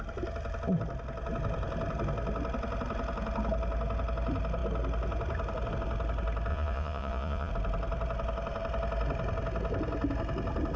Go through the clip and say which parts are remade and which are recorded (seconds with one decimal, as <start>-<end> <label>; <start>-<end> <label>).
0.0-6.5 recorded; 6.5-7.5 remade; 7.5-10.8 recorded